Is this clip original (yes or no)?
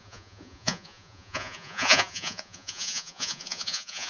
no